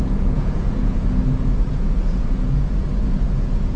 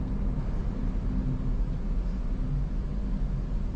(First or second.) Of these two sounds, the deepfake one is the first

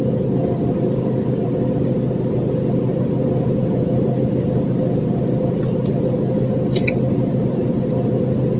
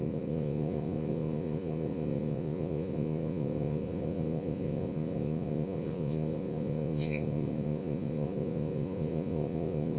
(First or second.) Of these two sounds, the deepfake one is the second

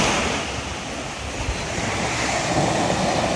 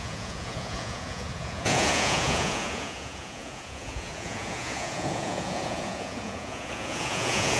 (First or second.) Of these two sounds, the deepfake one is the second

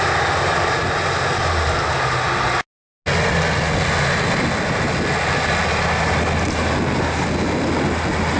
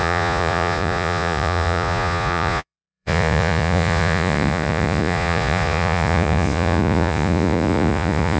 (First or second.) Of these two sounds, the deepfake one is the second